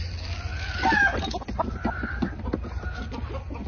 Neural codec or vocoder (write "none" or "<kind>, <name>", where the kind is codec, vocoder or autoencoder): none